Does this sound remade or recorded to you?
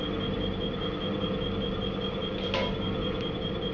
recorded